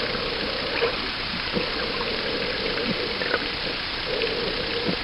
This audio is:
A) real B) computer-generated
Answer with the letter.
A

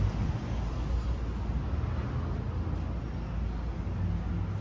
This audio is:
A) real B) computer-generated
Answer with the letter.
A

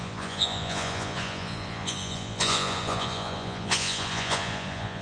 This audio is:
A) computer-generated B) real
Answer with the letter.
A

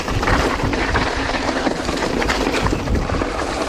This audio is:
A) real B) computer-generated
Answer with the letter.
B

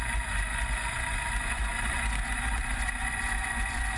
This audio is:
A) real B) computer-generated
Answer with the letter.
B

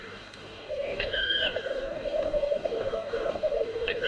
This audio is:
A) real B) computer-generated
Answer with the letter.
B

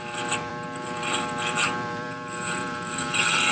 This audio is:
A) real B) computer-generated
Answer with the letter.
B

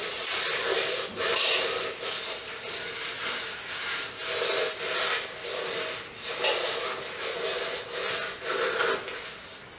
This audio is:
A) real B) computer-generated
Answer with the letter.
A